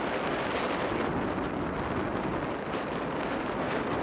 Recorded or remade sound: recorded